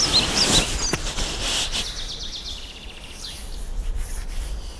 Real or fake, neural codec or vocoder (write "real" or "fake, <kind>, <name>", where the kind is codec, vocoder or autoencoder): real